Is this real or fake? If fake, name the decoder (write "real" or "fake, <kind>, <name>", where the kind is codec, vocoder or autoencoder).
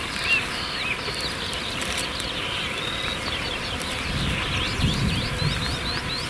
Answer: real